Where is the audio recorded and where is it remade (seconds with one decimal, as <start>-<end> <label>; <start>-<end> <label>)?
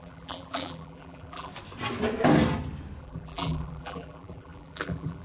0.0-1.5 remade; 1.5-3.0 recorded; 3.0-5.2 remade